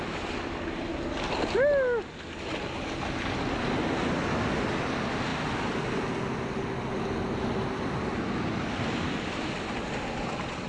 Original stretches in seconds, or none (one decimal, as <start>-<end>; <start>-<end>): 0.0-10.7